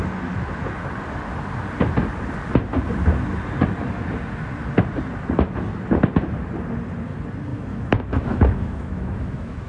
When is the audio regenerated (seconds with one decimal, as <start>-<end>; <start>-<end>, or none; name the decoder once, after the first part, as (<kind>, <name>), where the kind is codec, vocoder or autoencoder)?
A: 7.5-9.7 (autoencoder, DAC-VAE)